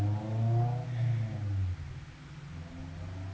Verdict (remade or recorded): recorded